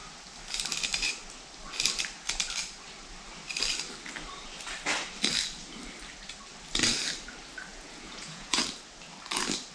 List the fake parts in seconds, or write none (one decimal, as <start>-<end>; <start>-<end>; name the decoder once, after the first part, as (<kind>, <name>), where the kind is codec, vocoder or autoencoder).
7.7-8.6 (vocoder, Vocos)